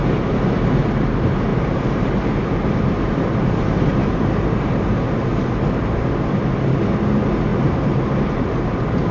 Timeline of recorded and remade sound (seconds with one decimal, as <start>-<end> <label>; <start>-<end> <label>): 0.0-1.5 recorded; 1.5-2.4 remade; 2.4-4.0 recorded; 4.0-5.0 remade; 5.0-7.5 recorded; 7.5-9.1 remade